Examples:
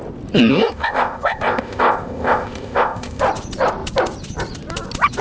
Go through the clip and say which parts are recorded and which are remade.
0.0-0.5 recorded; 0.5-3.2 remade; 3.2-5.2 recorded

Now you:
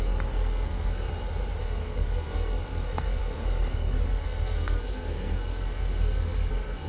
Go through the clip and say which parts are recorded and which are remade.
0.0-1.1 remade; 1.1-1.6 recorded; 1.6-6.9 remade

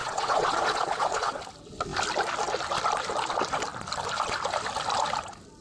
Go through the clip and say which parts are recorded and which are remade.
0.0-1.4 remade; 1.4-5.6 recorded

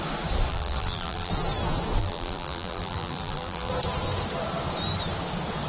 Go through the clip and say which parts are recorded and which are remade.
0.0-0.5 recorded; 0.5-1.3 remade; 1.3-2.0 recorded; 2.0-3.7 remade; 3.7-5.7 recorded